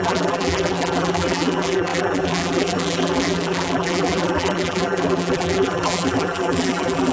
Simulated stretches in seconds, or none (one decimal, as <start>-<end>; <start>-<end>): 0.0-7.1